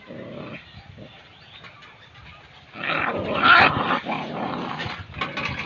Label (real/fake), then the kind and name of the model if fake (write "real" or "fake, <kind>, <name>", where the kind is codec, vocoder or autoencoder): real